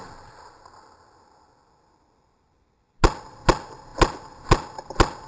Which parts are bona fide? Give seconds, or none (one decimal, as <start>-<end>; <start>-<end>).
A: 0.0-5.3